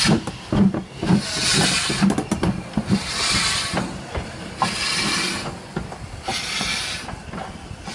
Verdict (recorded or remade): recorded